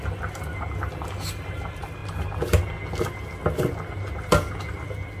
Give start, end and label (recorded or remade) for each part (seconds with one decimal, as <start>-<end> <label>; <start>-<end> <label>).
0.0-5.2 recorded